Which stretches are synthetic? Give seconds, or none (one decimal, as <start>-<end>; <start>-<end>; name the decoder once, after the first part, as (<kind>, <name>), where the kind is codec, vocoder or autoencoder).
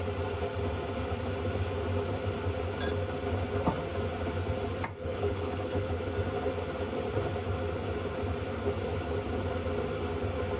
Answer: 5.0-6.1 (codec, HILCodec)